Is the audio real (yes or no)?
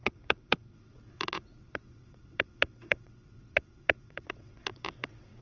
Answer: no